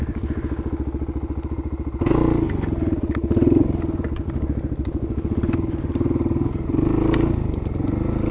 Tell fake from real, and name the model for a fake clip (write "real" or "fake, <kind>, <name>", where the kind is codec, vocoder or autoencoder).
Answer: real